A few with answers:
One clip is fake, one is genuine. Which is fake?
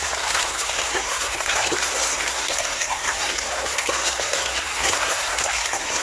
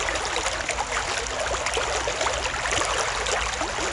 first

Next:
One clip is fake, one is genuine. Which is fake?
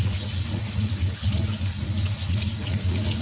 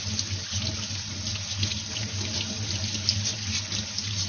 first